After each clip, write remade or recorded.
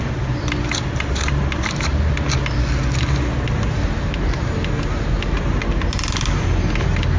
recorded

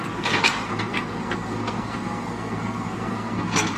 remade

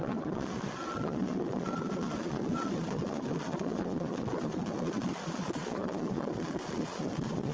remade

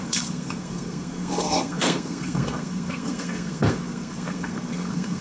remade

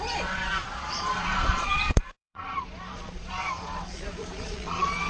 remade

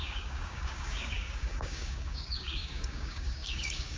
remade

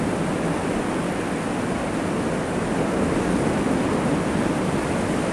recorded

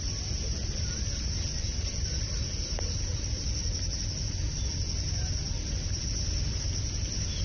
recorded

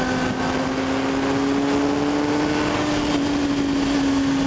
recorded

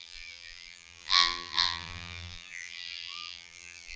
remade